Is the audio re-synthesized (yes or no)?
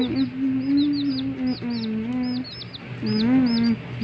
no